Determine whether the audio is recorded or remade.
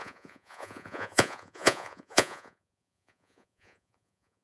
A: remade